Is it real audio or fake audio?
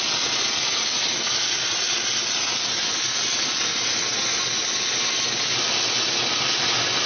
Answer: real